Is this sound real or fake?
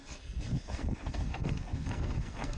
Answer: fake